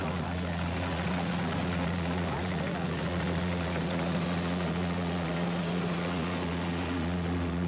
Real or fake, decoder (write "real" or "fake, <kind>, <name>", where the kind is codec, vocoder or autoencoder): fake, vocoder, Vocos